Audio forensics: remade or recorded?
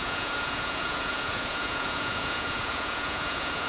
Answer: remade